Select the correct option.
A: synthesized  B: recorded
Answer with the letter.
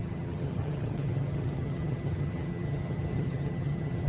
A